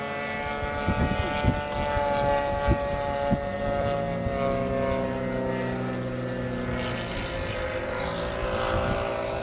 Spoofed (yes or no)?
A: no